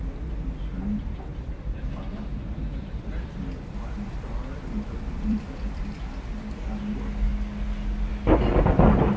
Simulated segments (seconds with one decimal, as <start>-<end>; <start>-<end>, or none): 1.3-1.8; 2.3-5.8